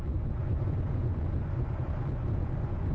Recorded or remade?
remade